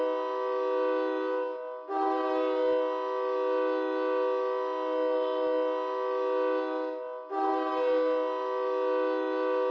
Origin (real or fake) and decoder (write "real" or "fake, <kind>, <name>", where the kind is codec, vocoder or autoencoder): real